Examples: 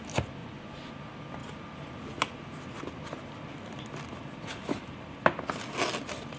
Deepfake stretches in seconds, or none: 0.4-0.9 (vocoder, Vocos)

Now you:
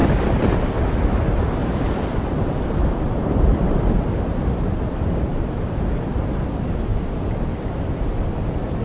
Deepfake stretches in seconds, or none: 1.6-6.3 (vocoder, BigVGAN v2); 6.9-7.7

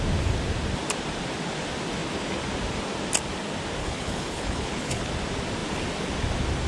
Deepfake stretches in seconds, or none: 3.8-5.1 (codec, HILCodec)

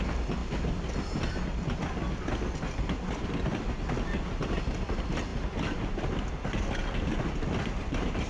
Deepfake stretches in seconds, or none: none

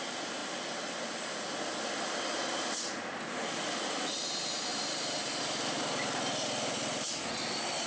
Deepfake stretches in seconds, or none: none

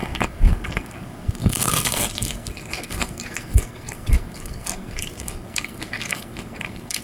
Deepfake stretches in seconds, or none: 0.0-7.0 (codec, SNAC)